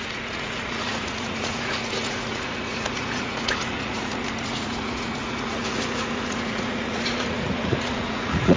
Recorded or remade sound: remade